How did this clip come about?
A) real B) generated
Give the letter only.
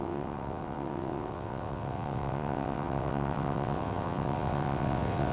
B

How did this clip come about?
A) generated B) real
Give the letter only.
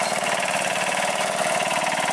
A